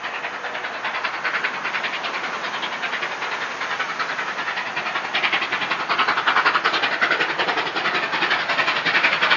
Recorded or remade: recorded